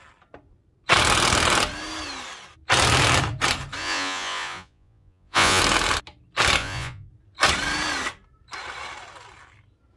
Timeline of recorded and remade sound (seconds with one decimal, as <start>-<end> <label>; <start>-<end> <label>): 0.0-3.8 recorded; 3.8-5.6 remade; 5.6-6.6 recorded; 6.6-7.1 remade; 7.1-10.0 recorded